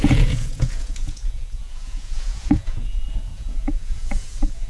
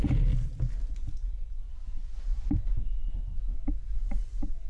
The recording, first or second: second